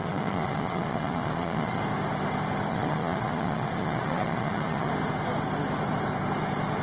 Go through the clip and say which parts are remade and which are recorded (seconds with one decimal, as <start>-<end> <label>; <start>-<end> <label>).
0.0-1.8 remade; 1.8-2.7 recorded; 2.7-4.9 remade; 4.9-6.8 recorded